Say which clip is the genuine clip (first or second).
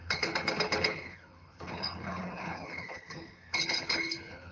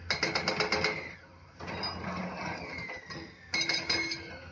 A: second